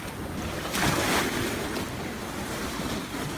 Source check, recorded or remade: recorded